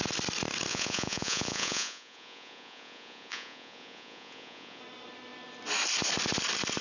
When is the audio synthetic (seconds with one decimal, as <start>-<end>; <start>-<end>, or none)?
0.7-4.8